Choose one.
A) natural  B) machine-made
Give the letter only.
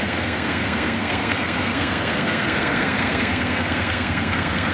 B